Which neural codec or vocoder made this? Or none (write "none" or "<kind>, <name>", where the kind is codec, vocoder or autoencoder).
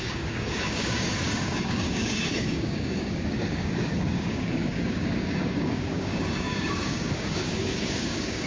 codec, DAC